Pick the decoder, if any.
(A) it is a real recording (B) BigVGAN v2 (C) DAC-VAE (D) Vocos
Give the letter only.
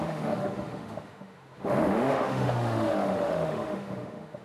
C